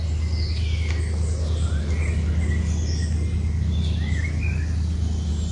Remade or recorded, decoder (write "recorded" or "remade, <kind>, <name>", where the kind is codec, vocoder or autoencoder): recorded